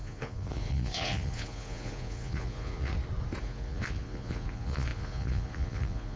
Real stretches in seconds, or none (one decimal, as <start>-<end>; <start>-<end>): 2.9-3.4